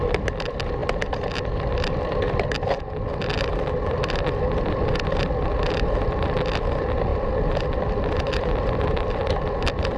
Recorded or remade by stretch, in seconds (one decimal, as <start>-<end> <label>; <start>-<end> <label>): 0.0-0.8 remade; 0.8-1.7 recorded; 1.7-7.1 remade; 7.1-8.2 recorded; 8.2-10.0 remade

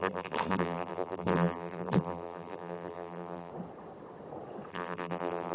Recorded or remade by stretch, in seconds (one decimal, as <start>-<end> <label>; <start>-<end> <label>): 0.0-3.5 remade; 3.5-4.7 recorded; 4.7-5.5 remade

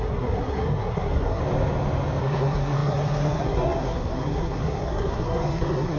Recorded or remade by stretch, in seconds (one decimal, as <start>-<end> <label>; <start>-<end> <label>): 0.0-1.4 remade; 1.4-2.2 recorded; 2.2-6.0 remade

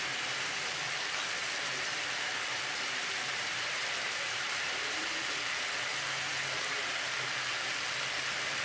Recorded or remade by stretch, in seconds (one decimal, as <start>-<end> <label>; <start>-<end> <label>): 0.0-2.5 recorded; 2.5-5.3 remade; 5.3-8.6 recorded